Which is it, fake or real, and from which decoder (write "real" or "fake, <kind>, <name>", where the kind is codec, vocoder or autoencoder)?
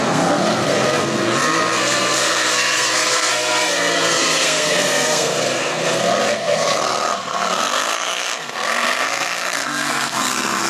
fake, codec, SNAC